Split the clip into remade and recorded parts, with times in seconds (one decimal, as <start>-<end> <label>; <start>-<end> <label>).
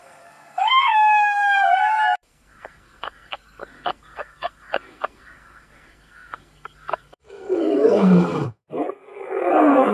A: 0.0-9.9 remade